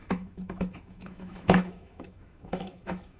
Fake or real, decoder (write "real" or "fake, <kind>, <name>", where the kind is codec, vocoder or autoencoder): fake, autoencoder, DAC-VAE